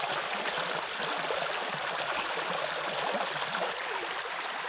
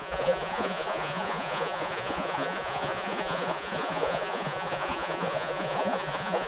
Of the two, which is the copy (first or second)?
second